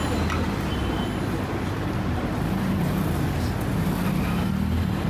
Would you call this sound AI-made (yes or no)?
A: no